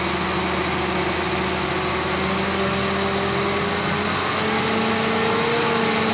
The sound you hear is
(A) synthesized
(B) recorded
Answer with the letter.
B